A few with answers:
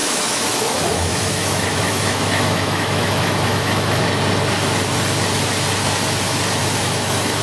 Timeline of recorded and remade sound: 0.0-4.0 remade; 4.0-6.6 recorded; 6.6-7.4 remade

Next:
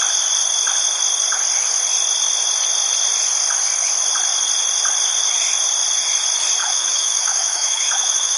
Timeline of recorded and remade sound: 0.0-6.6 recorded; 6.6-8.4 remade